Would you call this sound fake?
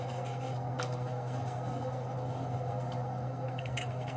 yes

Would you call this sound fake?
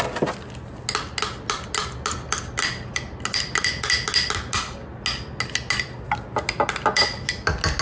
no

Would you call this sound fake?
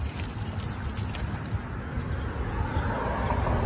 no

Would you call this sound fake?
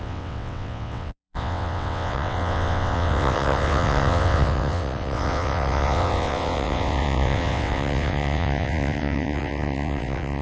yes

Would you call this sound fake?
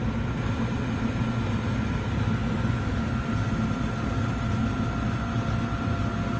no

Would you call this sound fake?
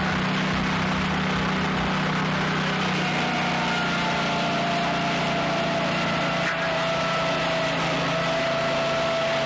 no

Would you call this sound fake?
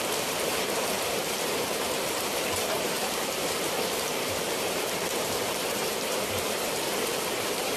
yes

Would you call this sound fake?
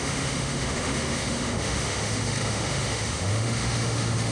yes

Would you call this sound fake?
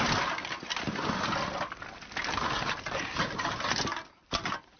no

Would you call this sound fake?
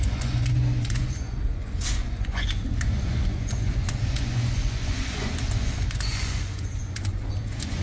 yes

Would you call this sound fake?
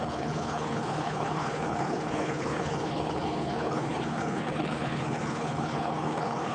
yes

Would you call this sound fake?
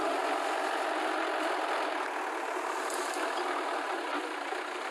no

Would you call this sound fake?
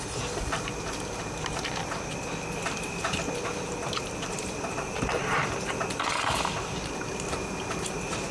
no